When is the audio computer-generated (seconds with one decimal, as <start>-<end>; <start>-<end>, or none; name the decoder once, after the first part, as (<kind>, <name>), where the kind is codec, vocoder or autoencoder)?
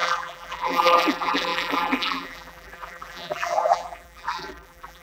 0.0-5.0 (vocoder, BigVGAN v2)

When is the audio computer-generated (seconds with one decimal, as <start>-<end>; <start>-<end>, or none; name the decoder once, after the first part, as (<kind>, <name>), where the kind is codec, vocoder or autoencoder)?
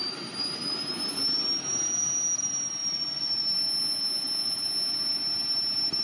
0.0-0.9 (vocoder, BigVGAN v2); 2.8-3.4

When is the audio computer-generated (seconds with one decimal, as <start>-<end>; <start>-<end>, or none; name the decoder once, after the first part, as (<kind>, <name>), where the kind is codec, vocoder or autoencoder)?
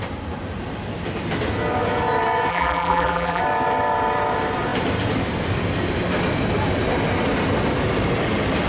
2.5-3.4 (vocoder, BigVGAN v2)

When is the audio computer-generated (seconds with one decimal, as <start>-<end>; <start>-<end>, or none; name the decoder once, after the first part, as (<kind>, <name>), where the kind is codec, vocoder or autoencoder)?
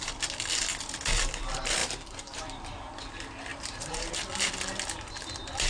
1.8-2.4 (vocoder, BigVGAN v2); 3.5-4.5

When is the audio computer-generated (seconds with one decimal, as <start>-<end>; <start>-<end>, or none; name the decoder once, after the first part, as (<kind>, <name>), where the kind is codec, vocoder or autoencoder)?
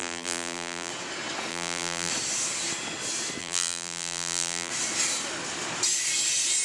0.0-0.9 (vocoder, BigVGAN v2); 1.5-2.1; 3.4-4.7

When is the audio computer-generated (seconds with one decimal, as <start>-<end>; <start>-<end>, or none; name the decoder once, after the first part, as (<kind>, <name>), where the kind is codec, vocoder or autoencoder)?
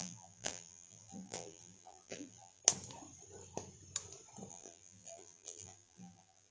0.0-2.6 (vocoder, BigVGAN v2); 4.5-6.5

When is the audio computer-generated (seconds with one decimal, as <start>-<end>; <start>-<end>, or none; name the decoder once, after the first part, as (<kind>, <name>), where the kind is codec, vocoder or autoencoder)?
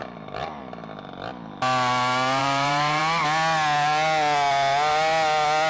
0.0-0.6 (vocoder, BigVGAN v2); 2.4-3.0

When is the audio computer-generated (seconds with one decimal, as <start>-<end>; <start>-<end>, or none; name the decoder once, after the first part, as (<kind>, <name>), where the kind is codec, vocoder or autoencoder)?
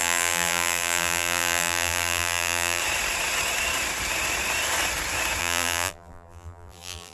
0.0-2.8 (vocoder, BigVGAN v2); 5.4-7.1